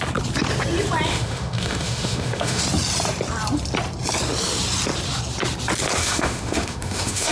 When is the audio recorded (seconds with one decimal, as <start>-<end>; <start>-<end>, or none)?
0.0-1.1; 2.6-6.0